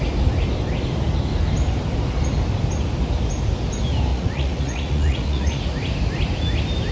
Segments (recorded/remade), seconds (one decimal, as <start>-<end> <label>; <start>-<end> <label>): 0.0-4.1 recorded; 4.1-5.6 remade; 5.6-6.9 recorded